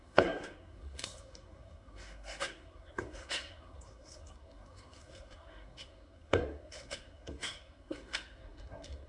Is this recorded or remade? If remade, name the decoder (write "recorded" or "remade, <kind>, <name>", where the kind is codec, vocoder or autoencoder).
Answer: remade, codec, SNAC